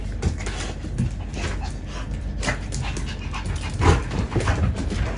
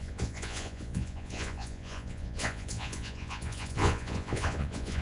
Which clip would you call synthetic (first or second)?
second